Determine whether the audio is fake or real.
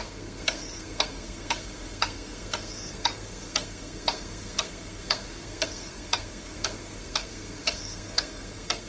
fake